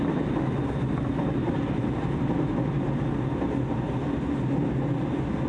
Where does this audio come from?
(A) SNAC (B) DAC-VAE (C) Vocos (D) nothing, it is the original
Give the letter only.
D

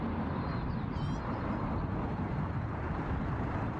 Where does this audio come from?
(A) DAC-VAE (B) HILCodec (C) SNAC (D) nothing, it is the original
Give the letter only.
D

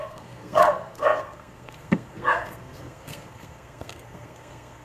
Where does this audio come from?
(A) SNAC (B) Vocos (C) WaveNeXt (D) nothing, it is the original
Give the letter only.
A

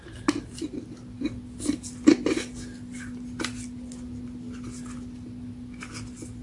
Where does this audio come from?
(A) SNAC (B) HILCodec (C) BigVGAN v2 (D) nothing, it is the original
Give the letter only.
D